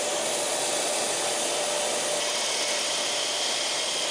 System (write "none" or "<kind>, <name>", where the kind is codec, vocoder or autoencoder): none